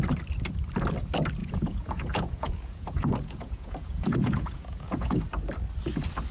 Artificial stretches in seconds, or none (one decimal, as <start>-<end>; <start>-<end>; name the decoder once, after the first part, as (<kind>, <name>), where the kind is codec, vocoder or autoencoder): 1.4-5.2 (vocoder, Vocos)